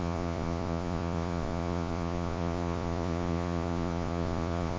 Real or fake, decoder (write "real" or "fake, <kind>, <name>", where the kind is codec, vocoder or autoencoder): fake, vocoder, Vocos